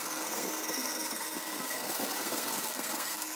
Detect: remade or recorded remade